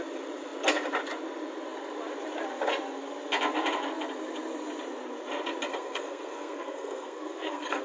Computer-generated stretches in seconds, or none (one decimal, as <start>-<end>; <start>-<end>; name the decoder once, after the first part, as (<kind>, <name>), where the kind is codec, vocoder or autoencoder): 5.7-7.8 (codec, SNAC)